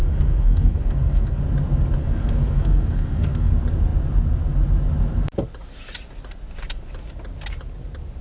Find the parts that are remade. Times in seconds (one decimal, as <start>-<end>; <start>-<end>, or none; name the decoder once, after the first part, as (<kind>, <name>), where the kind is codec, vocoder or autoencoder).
0.0-1.4 (codec, SNAC); 2.0-3.5